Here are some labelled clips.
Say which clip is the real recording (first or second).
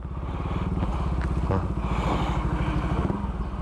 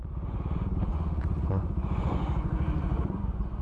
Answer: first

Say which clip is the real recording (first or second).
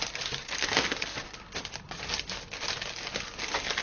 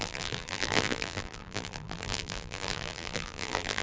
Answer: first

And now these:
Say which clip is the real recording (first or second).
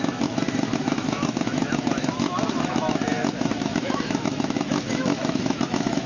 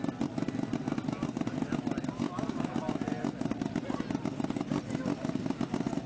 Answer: second